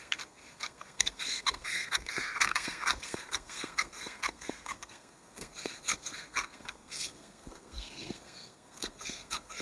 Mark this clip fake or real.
fake